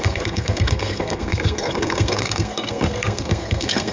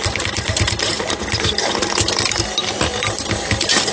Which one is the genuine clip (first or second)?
second